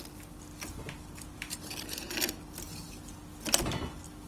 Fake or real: real